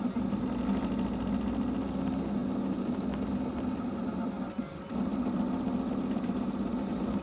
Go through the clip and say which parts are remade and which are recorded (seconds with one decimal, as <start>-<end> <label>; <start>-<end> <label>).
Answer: 0.0-7.2 recorded